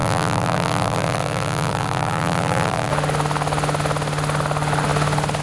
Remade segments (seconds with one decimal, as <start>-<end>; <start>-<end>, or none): 0.0-2.9